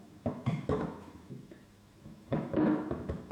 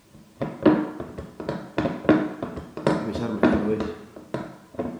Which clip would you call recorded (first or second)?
second